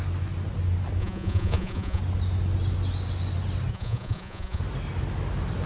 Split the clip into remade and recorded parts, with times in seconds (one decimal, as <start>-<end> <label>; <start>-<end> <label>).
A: 0.0-1.0 recorded; 1.0-2.0 remade; 2.0-3.7 recorded; 3.7-4.6 remade; 4.6-5.7 recorded